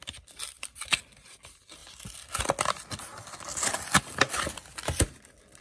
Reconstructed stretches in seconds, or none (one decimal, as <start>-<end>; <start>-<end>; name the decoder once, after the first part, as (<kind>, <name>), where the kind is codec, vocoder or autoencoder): none

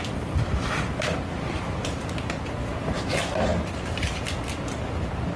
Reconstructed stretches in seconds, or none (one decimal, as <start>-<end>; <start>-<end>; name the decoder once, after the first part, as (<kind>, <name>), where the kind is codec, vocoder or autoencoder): 3.5-4.2 (vocoder, BigVGAN v2)

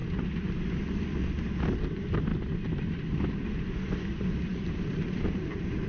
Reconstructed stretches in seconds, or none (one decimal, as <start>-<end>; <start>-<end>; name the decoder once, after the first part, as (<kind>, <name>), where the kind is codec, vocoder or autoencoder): 4.5-5.9 (vocoder, BigVGAN v2)

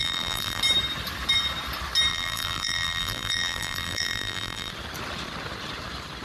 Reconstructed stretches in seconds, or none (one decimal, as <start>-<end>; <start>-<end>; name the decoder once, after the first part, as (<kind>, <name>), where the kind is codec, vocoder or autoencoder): 0.0-0.6 (vocoder, BigVGAN v2); 2.1-4.7